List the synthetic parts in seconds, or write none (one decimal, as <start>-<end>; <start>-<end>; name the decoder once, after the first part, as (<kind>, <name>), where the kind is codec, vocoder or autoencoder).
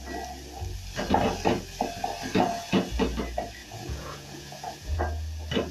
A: 3.6-5.0 (vocoder, Vocos)